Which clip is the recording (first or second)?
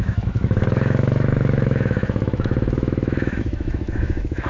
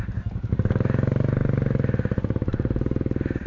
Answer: second